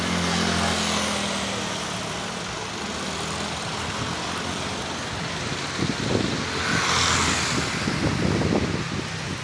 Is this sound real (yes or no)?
yes